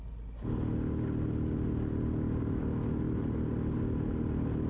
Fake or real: real